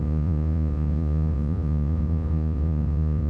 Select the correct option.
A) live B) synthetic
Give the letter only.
B